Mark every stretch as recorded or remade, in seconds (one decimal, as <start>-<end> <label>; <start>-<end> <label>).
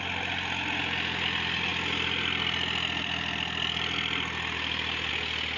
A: 0.0-5.6 recorded